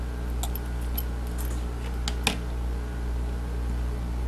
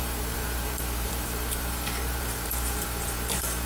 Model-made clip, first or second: second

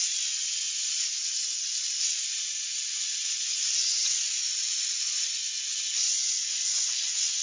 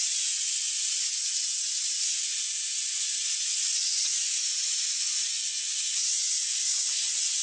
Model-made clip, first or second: second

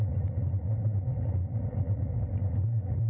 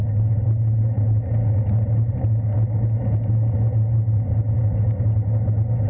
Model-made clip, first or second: first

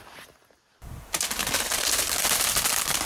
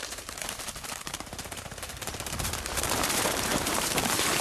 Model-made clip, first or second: second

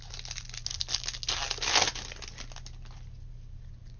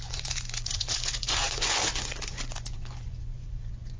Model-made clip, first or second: second